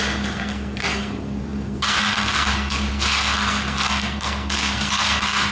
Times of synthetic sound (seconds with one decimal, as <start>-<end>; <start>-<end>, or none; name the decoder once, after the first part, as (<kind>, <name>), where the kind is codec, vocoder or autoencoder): 0.0-5.5 (codec, SNAC)